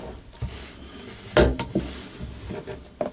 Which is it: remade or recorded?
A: recorded